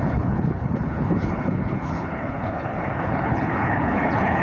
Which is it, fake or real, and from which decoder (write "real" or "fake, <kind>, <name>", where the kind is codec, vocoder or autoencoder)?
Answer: fake, codec, HILCodec